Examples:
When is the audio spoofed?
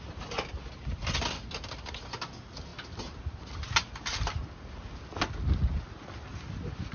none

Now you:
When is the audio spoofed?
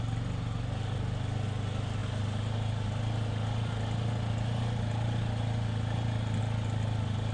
none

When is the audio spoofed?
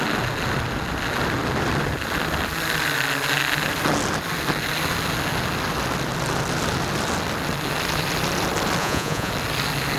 8.8-9.3 (vocoder, Vocos)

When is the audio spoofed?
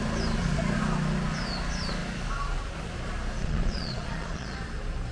3.4-4.6 (vocoder, Vocos)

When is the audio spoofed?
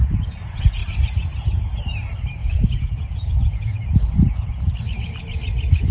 2.4-4.7 (vocoder, Vocos)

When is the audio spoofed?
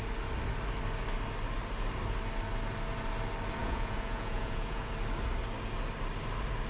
3.6-4.9 (vocoder, Vocos)